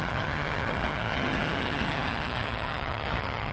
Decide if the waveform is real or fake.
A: fake